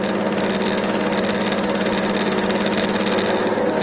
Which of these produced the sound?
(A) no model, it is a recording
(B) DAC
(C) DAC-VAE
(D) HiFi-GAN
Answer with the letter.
A